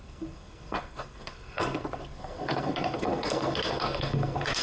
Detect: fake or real fake